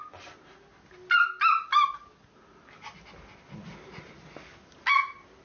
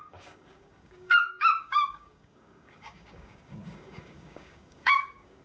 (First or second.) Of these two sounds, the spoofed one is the second